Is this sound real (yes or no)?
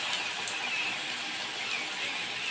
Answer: yes